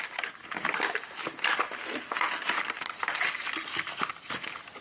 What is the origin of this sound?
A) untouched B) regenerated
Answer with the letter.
A